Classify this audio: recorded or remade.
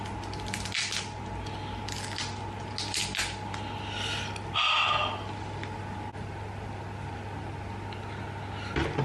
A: recorded